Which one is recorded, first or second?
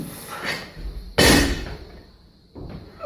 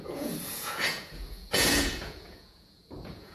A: first